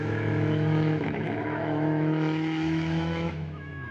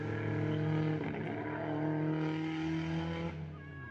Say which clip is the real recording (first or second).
second